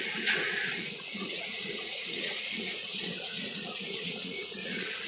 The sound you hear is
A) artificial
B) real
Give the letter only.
A